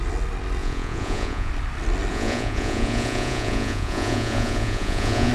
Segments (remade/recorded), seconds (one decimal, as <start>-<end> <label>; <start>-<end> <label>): 0.0-0.6 recorded; 0.6-1.5 remade; 1.5-2.1 recorded; 2.1-5.3 remade